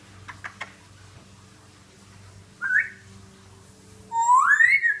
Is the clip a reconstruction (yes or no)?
no